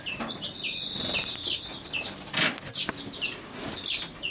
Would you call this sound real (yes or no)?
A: yes